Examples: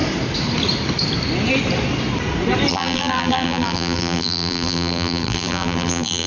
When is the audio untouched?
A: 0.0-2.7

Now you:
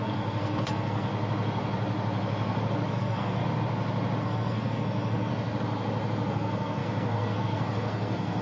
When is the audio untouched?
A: 1.1-2.9; 3.4-4.2; 5.3-6.3

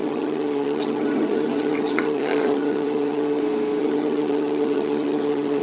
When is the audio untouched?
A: 3.4-3.8

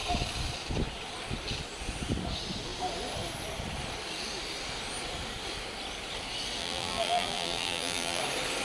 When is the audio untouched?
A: 0.0-6.6; 8.2-8.6

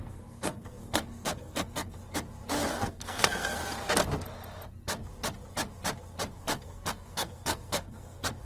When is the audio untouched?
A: 2.0-2.7; 3.6-6.3

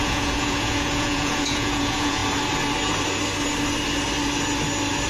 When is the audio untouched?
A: 2.2-5.1

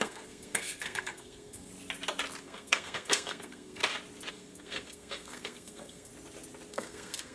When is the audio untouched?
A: 1.7-2.4; 3.8-4.3; 6.1-6.7